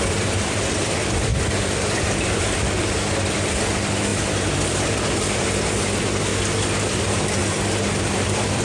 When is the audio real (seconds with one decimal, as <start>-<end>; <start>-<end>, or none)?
6.3-7.0